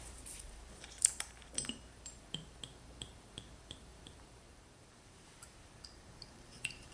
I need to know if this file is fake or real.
fake